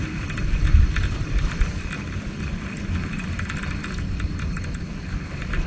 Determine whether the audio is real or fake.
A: fake